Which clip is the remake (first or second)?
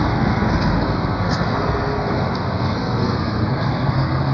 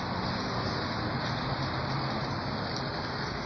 first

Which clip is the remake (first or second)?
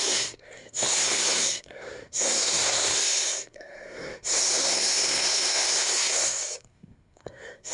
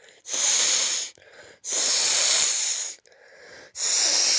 first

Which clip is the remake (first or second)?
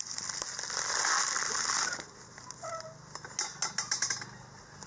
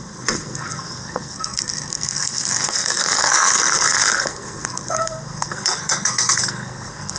second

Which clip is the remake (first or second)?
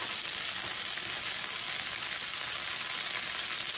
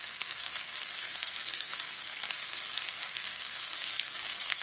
second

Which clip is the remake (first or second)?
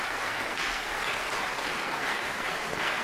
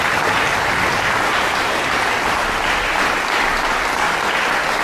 first